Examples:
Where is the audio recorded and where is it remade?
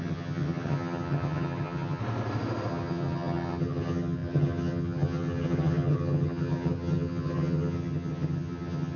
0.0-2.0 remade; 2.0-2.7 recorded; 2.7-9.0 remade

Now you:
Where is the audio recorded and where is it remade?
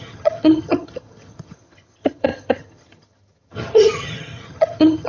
0.0-5.1 remade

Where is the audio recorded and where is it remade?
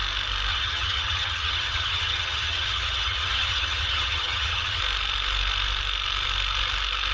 0.0-0.5 recorded; 0.5-4.8 remade; 4.8-7.1 recorded